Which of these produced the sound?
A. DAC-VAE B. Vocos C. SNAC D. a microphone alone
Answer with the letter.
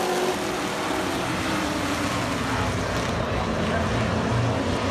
D